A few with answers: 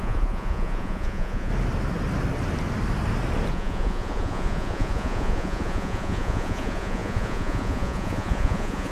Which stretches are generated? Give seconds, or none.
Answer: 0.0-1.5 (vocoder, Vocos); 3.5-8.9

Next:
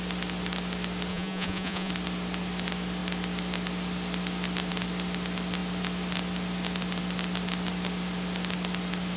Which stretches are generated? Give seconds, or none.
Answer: 1.1-1.9 (vocoder, Vocos)

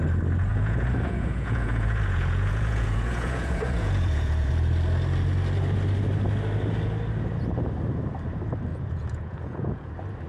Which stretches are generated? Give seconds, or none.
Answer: 0.5-4.5 (vocoder, Vocos); 8.7-9.9

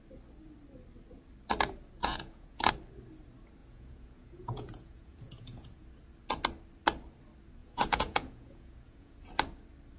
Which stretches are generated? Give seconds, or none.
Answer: 2.0-2.7 (vocoder, Vocos); 3.6-5.8; 7.6-9.3

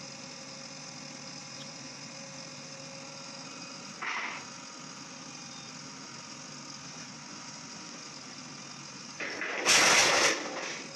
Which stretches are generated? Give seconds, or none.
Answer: 1.4-2.1 (vocoder, Vocos); 6.9-8.1

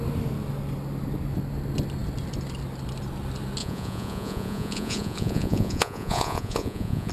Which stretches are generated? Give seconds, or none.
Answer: 3.6-7.1 (vocoder, Vocos)